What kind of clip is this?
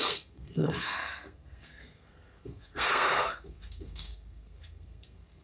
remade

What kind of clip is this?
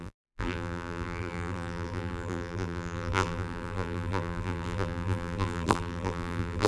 remade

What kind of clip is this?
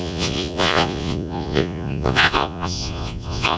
remade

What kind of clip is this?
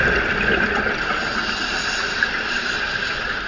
recorded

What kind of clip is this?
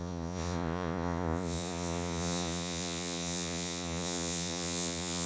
remade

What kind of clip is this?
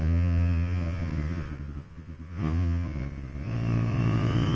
remade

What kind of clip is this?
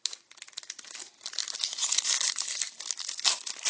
recorded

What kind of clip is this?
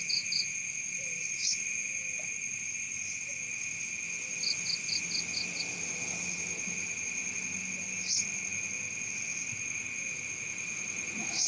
recorded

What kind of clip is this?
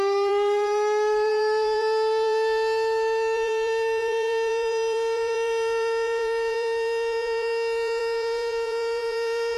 remade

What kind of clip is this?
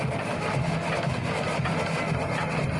recorded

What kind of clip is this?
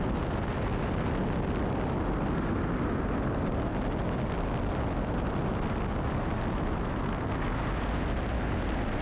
recorded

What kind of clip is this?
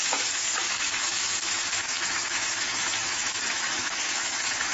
remade